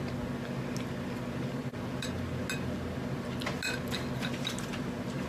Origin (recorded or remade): recorded